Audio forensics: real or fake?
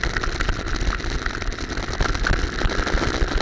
real